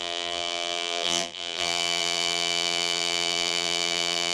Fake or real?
fake